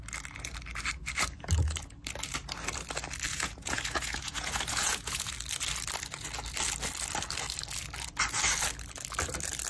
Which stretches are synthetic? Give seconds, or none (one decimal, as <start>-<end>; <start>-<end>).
3.3-5.3